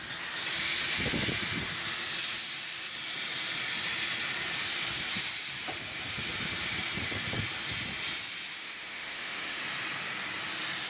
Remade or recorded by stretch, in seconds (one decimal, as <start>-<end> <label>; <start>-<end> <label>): 0.0-8.6 recorded; 8.6-9.6 remade; 9.6-10.9 recorded